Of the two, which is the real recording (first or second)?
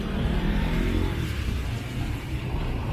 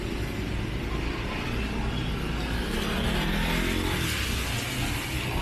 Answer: second